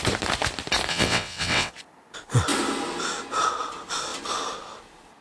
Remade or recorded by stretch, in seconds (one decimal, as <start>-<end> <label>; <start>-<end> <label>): 0.0-0.9 recorded; 0.9-1.7 remade; 1.7-5.2 recorded